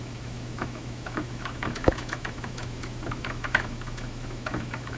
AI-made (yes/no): yes